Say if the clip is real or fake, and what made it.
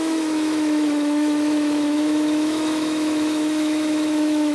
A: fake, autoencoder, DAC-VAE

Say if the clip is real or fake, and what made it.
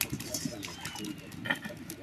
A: real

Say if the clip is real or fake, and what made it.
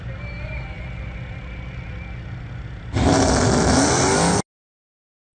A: real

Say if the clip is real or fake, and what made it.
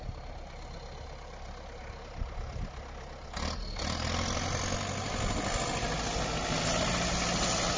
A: real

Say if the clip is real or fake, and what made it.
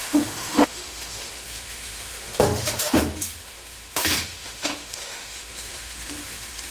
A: fake, autoencoder, DAC-VAE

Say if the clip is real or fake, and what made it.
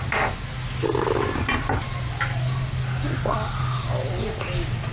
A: real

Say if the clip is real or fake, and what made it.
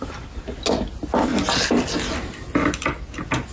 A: real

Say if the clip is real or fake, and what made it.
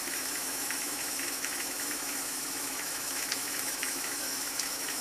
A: fake, autoencoder, DAC-VAE